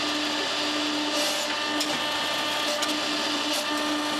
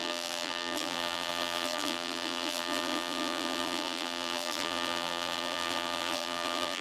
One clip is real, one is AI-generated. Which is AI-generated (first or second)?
second